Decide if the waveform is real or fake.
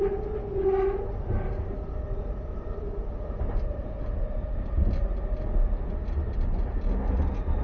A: real